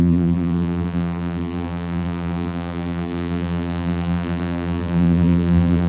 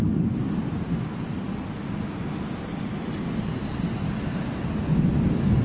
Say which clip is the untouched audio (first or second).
second